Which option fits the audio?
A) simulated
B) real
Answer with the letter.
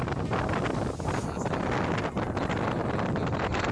B